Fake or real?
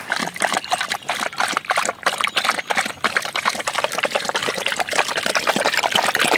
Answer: real